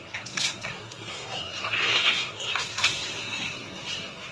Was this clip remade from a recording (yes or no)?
yes